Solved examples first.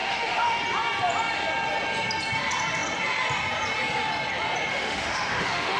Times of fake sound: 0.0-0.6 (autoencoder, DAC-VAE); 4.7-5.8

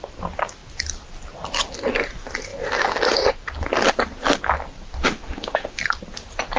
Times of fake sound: 5.1-5.8 (autoencoder, DAC-VAE)

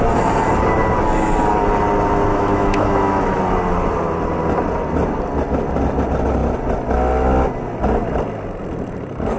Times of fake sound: 2.3-3.4 (autoencoder, DAC-VAE)

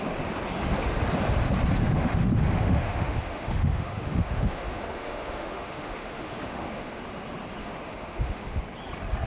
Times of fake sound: 1.8-7.0 (autoencoder, DAC-VAE); 7.6-8.6